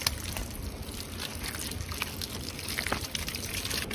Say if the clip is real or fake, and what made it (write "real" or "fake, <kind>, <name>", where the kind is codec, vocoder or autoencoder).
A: real